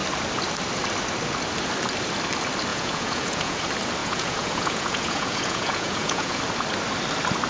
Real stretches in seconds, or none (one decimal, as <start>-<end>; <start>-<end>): 0.0-2.7; 3.6-4.0; 6.4-7.5